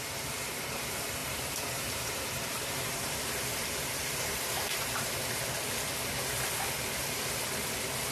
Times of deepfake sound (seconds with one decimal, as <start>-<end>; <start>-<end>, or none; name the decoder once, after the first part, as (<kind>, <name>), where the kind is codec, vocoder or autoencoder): 1.2-5.2 (vocoder, BigVGAN v2)